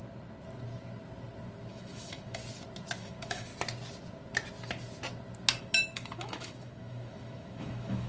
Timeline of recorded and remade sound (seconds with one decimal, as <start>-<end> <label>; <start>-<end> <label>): 0.0-1.7 recorded; 1.7-2.4 remade; 2.4-3.0 recorded; 3.0-3.5 remade; 3.5-5.6 recorded; 5.6-8.1 remade